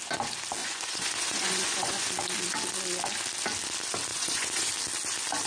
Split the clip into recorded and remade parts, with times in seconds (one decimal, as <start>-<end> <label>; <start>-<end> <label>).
0.0-0.6 recorded; 0.6-2.1 remade; 2.1-4.1 recorded; 4.1-4.7 remade; 4.7-5.5 recorded